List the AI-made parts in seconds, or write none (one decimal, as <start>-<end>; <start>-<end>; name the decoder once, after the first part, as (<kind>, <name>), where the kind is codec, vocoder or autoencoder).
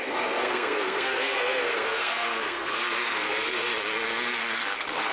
0.0-3.7 (codec, SNAC); 4.4-5.1